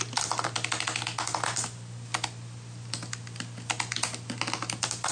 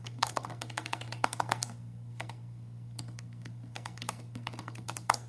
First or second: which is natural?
first